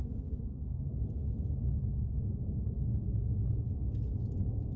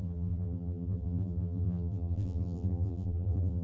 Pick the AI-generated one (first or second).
second